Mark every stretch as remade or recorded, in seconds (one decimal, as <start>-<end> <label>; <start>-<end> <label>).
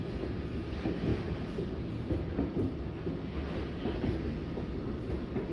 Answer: 0.0-5.5 recorded